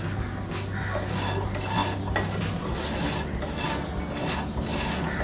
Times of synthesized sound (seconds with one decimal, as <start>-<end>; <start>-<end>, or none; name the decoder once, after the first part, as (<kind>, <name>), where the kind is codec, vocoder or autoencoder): none